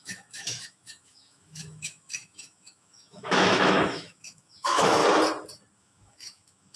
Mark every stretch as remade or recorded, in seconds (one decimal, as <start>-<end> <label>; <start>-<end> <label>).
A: 0.0-5.0 remade; 5.0-5.8 recorded; 5.8-6.8 remade